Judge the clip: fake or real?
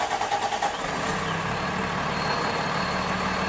real